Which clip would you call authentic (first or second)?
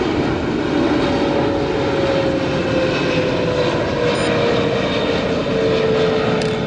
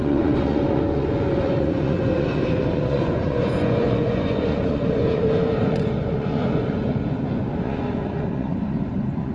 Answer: first